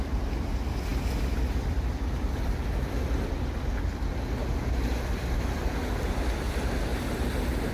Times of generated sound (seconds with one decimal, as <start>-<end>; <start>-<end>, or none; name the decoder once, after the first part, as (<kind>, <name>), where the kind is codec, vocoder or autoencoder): none